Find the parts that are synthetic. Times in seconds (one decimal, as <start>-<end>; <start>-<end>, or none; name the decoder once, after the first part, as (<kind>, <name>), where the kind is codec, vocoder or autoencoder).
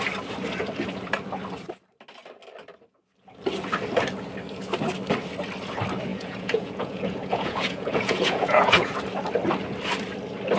6.1-8.9 (vocoder, Vocos)